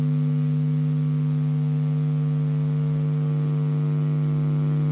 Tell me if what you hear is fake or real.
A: real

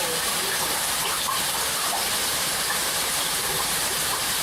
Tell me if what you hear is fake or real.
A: fake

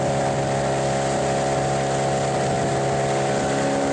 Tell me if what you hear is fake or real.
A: real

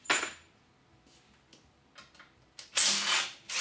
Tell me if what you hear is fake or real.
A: real